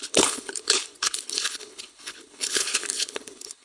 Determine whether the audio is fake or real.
fake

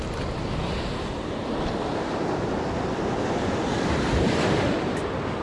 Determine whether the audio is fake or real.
real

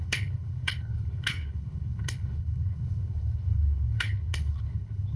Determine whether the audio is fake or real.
fake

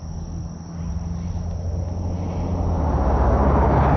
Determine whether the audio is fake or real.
real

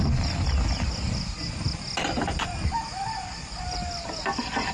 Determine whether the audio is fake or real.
real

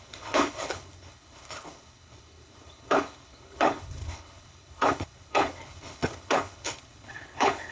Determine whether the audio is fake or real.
fake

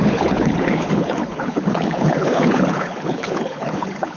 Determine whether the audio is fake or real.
fake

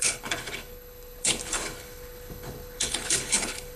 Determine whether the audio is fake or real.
fake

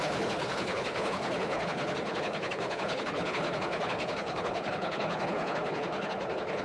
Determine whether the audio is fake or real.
fake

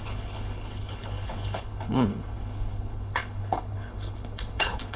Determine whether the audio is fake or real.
fake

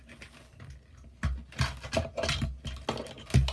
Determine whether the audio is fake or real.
real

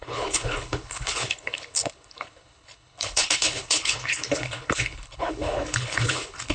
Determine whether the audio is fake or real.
fake